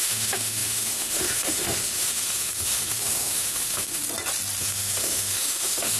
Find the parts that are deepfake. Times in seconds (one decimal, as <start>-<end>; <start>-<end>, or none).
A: 0.0-4.0; 4.6-6.0